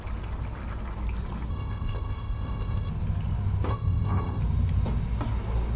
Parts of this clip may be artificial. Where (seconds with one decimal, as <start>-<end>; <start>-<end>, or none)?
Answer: 1.5-2.9; 3.7-4.4